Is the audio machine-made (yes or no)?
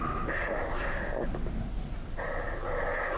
no